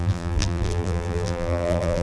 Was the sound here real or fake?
fake